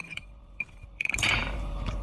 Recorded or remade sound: remade